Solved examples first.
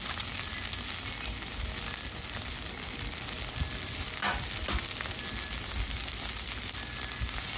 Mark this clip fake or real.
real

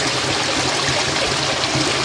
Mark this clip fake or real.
real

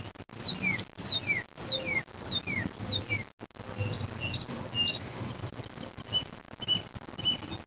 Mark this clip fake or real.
real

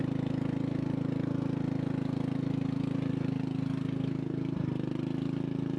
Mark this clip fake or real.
real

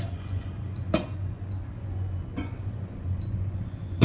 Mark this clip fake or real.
fake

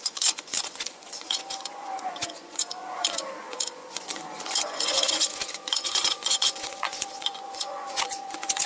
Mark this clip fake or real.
fake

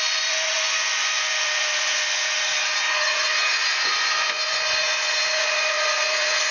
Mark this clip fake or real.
fake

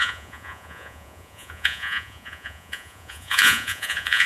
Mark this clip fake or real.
fake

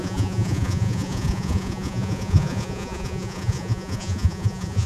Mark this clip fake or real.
fake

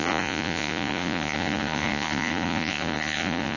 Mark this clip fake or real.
fake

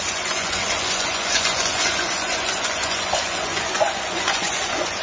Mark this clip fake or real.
fake